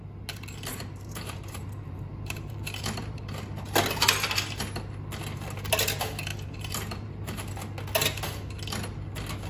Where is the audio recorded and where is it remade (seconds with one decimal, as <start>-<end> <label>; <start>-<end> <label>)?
0.0-0.7 recorded; 0.7-3.2 remade; 3.2-6.3 recorded; 6.3-7.6 remade; 7.6-9.5 recorded